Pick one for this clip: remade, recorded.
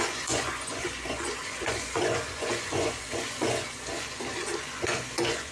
remade